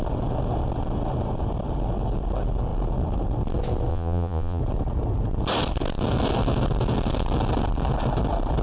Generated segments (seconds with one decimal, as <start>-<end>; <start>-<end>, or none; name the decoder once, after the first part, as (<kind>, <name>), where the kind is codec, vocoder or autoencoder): 3.9-4.6 (vocoder, Vocos)